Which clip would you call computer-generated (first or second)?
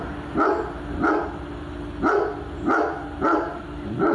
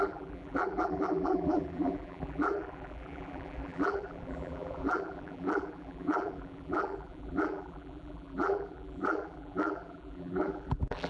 second